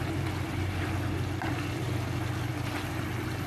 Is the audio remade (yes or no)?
no